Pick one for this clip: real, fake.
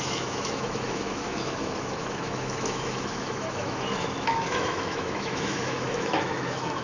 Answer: fake